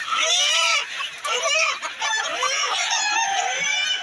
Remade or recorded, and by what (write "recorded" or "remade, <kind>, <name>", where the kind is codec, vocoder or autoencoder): recorded